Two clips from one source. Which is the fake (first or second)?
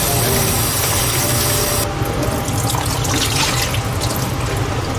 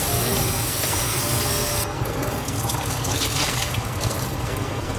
second